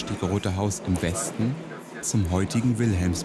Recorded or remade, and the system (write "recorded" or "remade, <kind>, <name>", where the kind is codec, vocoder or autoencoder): recorded